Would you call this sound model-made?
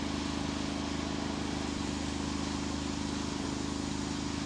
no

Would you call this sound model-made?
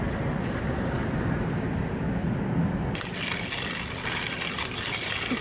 no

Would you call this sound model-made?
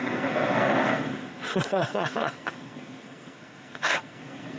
yes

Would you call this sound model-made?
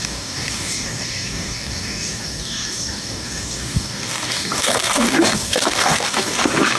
yes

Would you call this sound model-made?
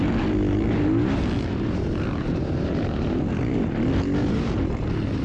no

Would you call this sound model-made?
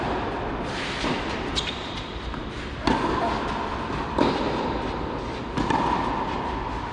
no